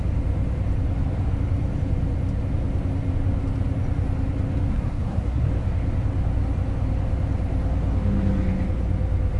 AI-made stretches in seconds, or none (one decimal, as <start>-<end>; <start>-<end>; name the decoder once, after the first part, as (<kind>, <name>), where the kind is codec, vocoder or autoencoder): 4.7-5.5 (codec, SNAC)